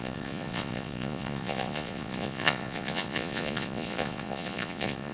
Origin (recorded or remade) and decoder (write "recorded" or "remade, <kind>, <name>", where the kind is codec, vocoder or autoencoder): remade, vocoder, Vocos